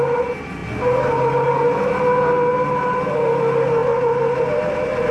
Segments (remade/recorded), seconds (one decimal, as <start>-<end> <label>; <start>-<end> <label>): 0.0-5.1 recorded

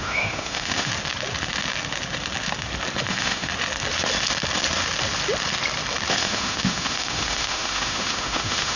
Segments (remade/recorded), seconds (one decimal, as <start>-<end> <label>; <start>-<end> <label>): 0.0-0.9 remade; 0.9-3.1 recorded; 3.1-3.5 remade; 3.5-6.1 recorded; 6.1-8.8 remade

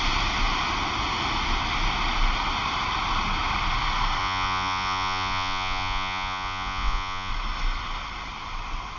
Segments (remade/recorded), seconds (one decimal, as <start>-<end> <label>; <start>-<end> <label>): 0.0-4.2 recorded; 4.2-7.3 remade; 7.3-9.0 recorded

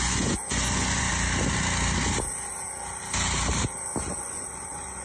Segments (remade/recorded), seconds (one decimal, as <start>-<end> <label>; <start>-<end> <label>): 0.0-1.1 remade; 1.1-4.1 recorded; 4.1-5.0 remade

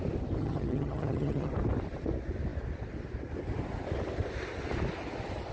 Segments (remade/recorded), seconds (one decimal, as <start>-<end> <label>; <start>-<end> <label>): 0.0-0.4 recorded; 0.4-1.5 remade; 1.5-5.5 recorded